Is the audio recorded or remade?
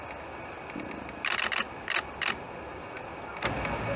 recorded